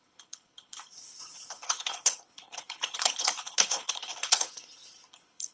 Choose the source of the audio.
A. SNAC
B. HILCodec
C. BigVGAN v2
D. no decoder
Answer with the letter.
B